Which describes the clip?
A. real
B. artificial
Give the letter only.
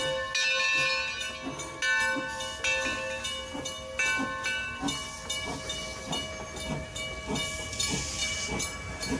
A